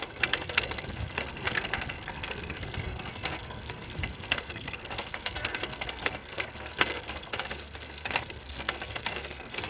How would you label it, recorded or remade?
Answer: remade